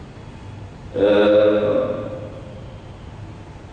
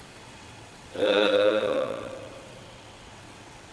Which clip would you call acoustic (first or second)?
first